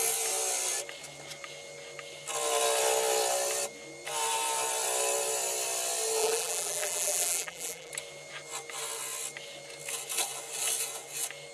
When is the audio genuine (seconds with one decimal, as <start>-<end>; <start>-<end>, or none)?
0.0-6.2; 7.9-11.5